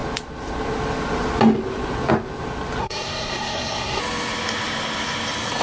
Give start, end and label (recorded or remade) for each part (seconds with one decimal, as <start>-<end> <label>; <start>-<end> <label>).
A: 0.0-2.8 recorded; 2.8-4.0 remade; 4.0-5.6 recorded